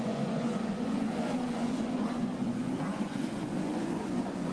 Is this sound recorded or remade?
remade